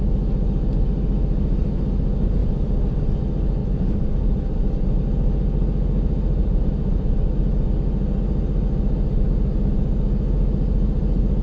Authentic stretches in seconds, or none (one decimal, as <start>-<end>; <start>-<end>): 0.0-2.4; 3.0-3.6; 5.0-6.4; 7.4-11.4

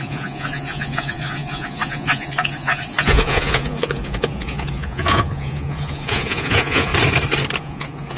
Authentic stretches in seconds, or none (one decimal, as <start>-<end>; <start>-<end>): 6.9-7.6

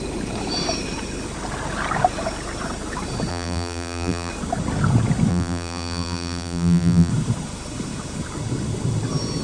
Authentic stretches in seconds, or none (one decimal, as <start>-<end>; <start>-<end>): 0.0-3.3; 4.3-5.3; 7.1-9.4

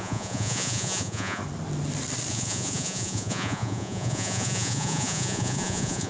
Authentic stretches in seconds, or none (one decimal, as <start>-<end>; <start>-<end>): 1.4-2.3

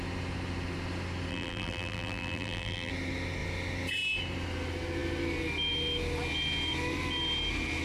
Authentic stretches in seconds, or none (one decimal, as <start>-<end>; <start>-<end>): 0.0-1.3; 2.9-7.8

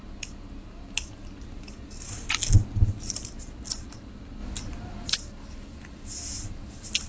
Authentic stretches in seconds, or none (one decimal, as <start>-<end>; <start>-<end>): 0.0-7.1

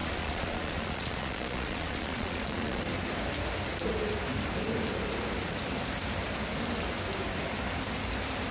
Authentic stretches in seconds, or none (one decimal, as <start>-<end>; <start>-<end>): 2.8-8.5